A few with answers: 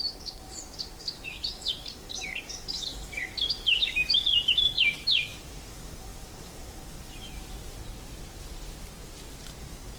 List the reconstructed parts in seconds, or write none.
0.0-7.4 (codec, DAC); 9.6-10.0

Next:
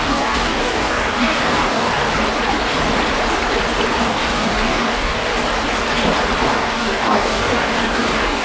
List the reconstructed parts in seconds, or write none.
0.0-2.1 (codec, DAC); 4.0-5.3; 6.5-8.4

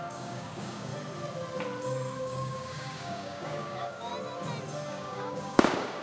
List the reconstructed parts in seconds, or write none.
0.0-0.9 (codec, DAC); 2.2-4.1; 4.9-6.0